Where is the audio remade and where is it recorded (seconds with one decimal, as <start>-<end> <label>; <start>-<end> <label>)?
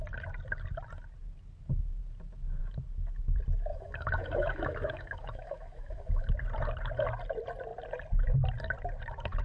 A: 0.0-3.7 recorded; 3.7-6.3 remade; 6.3-9.4 recorded